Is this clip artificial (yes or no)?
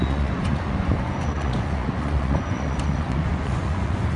yes